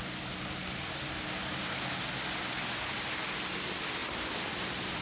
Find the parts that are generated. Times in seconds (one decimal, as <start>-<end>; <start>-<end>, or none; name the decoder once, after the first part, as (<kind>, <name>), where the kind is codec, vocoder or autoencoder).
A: 4.0-5.0 (vocoder, BigVGAN v2)

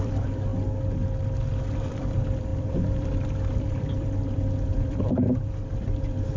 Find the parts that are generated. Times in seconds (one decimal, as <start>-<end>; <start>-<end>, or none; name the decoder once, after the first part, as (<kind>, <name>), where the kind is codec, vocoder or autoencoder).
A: 0.0-0.5 (vocoder, BigVGAN v2); 1.5-6.4

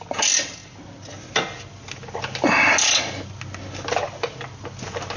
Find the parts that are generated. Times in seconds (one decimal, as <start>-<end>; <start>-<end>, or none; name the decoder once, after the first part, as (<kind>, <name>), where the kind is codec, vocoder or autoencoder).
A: none

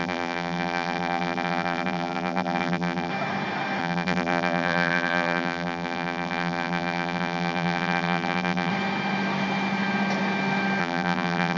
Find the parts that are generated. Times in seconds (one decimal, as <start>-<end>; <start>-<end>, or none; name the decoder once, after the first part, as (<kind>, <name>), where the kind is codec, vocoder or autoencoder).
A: 0.0-3.1 (vocoder, BigVGAN v2); 3.8-8.7; 10.8-11.6

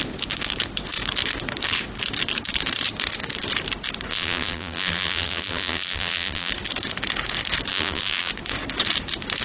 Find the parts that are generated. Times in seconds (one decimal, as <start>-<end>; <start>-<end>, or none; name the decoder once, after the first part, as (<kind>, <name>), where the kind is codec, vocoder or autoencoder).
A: 4.1-6.5 (vocoder, BigVGAN v2); 7.7-8.3

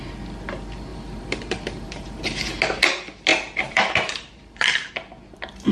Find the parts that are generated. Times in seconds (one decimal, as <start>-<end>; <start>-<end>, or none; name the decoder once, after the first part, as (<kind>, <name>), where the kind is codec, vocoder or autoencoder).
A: 0.9-2.6 (vocoder, BigVGAN v2); 3.3-4.9

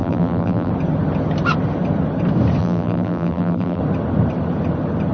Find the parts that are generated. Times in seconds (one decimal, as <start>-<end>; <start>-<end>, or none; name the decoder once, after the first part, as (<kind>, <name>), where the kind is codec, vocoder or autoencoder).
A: 0.0-0.7 (vocoder, BigVGAN v2); 2.6-3.8